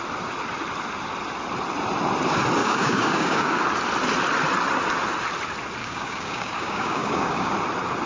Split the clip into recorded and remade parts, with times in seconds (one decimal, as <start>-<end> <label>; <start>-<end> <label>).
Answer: 0.0-2.6 recorded; 2.6-3.6 remade; 3.6-5.8 recorded; 5.8-7.5 remade; 7.5-8.1 recorded

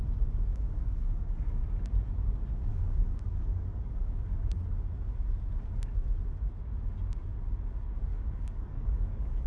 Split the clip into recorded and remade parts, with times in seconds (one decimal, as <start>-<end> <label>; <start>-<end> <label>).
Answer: 0.0-0.5 recorded; 0.5-1.6 remade; 1.6-2.7 recorded; 2.7-4.6 remade; 4.6-8.1 recorded; 8.1-9.5 remade

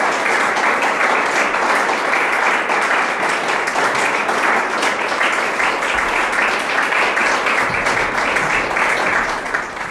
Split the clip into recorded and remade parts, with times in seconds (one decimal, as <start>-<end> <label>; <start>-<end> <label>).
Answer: 0.0-9.9 recorded

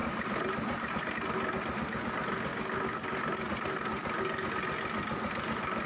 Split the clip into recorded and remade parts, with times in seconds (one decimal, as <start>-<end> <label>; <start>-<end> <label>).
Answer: 0.0-1.1 remade; 1.1-5.9 recorded